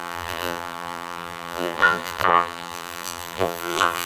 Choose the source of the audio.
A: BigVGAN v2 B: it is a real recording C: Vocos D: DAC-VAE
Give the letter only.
A